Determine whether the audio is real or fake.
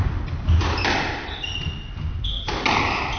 real